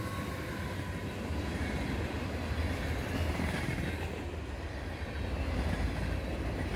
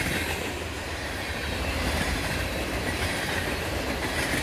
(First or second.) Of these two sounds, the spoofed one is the second